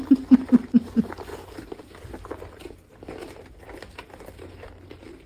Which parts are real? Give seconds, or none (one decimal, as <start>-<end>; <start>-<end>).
0.0-1.3; 3.4-5.3